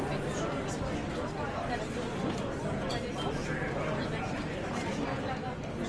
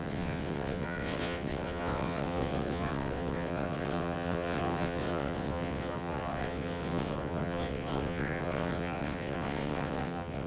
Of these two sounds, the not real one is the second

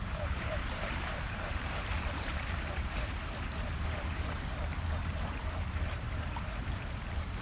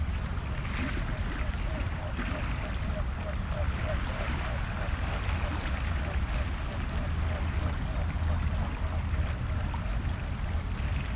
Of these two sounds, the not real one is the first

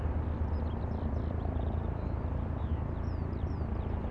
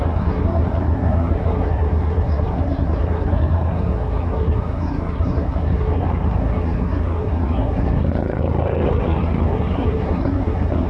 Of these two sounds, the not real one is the second